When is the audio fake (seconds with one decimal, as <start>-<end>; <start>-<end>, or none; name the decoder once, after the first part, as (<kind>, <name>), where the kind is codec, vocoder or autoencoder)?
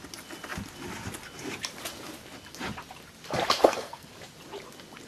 3.6-4.1 (codec, SNAC)